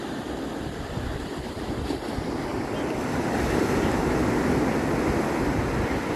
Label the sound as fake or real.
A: real